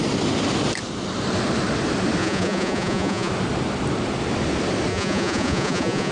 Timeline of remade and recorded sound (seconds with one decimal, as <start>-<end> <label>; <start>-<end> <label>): 0.0-2.2 recorded; 2.2-3.3 remade; 3.3-4.9 recorded; 4.9-6.1 remade